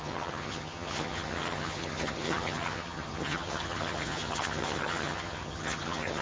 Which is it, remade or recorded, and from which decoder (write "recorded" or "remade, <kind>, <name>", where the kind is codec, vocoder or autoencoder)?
remade, vocoder, HiFi-GAN